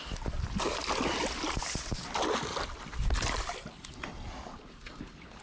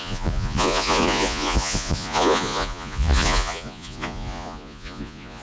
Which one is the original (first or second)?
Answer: first